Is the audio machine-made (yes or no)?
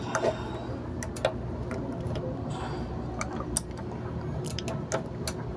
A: no